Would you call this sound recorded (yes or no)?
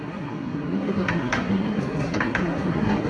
no